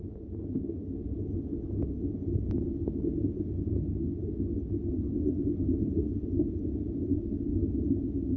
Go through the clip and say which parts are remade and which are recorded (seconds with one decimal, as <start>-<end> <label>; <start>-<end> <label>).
0.0-8.4 recorded